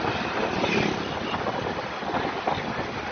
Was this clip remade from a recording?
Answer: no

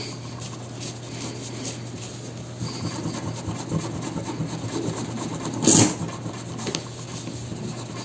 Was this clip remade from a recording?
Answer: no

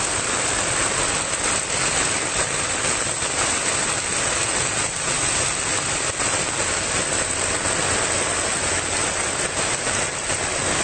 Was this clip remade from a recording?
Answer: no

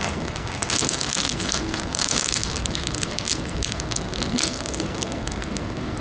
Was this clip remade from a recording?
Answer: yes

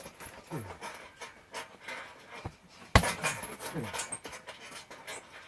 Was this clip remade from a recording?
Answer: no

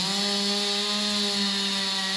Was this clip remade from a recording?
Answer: no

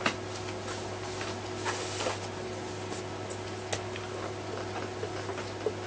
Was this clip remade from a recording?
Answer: no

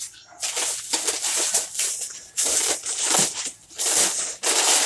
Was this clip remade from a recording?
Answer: no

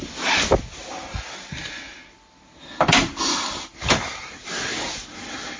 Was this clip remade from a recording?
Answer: no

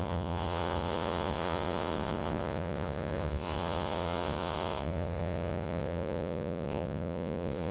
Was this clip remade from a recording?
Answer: yes